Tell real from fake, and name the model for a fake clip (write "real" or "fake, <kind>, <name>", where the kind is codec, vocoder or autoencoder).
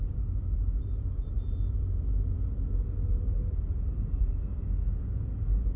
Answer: real